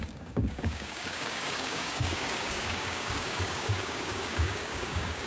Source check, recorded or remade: remade